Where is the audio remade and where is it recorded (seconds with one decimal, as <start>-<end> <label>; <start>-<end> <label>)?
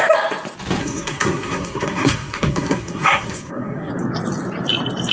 0.0-0.8 recorded; 0.8-3.9 remade; 3.9-5.1 recorded